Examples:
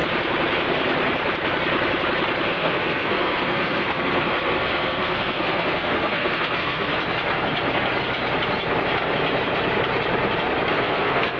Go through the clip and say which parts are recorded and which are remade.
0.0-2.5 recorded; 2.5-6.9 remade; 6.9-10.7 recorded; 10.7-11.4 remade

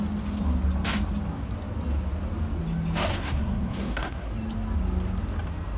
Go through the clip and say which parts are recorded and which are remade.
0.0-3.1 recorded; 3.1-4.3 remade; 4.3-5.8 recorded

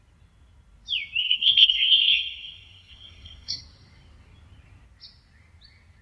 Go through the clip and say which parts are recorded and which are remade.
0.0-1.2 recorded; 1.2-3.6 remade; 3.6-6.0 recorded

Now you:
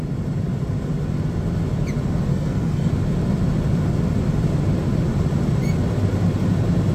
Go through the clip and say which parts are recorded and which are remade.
0.0-2.3 recorded; 2.3-2.9 remade; 2.9-6.9 recorded

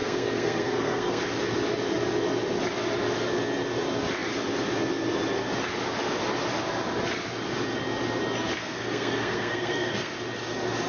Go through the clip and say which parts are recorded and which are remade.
0.0-1.2 remade; 1.2-8.6 recorded; 8.6-10.1 remade; 10.1-10.9 recorded

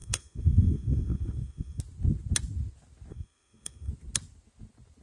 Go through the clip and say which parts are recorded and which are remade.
0.0-1.8 remade; 1.8-3.1 recorded; 3.1-3.9 remade; 3.9-5.0 recorded